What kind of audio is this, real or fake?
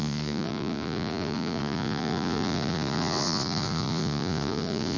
fake